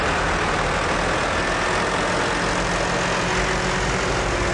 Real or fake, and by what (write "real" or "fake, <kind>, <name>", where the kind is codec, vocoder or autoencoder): real